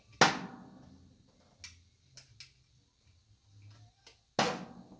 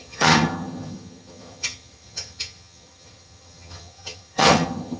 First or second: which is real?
first